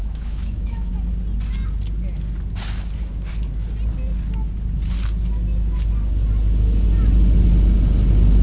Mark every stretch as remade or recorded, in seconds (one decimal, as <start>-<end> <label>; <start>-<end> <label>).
0.0-0.9 remade; 0.9-8.4 recorded